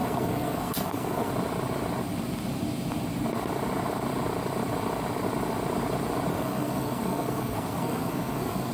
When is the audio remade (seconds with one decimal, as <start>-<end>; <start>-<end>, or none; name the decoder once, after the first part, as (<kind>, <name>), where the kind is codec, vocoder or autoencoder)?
0.0-1.3 (codec, SNAC); 6.3-8.7